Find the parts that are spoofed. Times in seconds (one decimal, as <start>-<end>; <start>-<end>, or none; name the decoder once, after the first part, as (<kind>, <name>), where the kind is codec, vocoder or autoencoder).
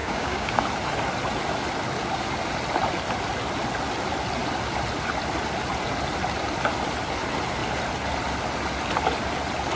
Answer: 0.0-0.6 (codec, DAC)